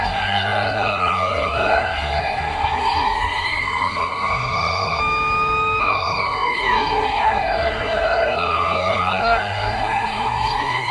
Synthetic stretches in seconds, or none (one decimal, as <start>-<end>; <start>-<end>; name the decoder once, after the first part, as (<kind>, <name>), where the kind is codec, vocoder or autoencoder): 0.0-5.0 (codec, SNAC); 5.8-10.9